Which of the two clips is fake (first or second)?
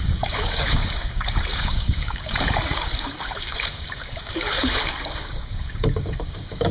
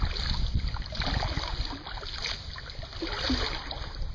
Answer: first